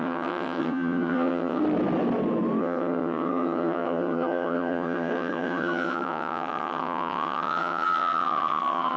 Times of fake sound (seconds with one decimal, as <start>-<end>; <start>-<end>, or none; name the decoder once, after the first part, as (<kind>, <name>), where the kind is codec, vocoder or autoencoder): 0.0-1.6 (vocoder, HiFi-GAN); 2.6-9.0